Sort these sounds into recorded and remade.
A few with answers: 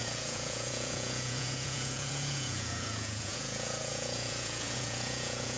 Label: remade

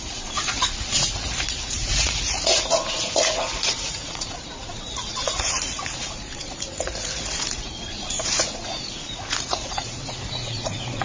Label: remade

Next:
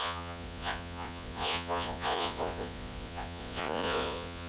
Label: remade